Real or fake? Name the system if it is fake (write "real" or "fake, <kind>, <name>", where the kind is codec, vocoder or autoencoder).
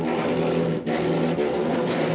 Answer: real